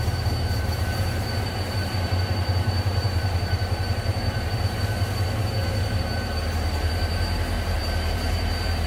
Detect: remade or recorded remade